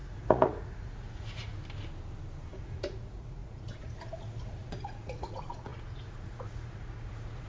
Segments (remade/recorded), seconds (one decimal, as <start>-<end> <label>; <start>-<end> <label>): 0.0-1.5 remade; 1.5-2.5 recorded; 2.5-7.5 remade